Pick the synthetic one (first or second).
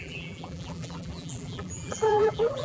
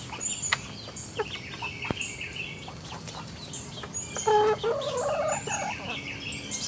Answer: first